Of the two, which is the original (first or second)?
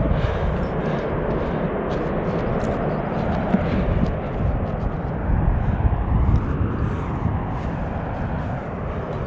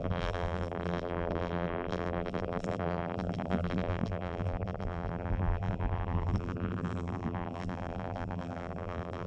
first